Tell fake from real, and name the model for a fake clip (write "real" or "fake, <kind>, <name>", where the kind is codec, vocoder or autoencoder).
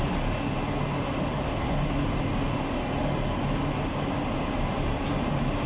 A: real